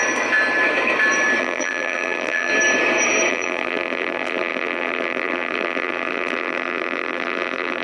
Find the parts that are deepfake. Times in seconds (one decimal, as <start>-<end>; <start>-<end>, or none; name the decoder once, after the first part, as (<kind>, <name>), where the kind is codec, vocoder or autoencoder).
1.4-2.5 (vocoder, BigVGAN v2); 3.3-7.8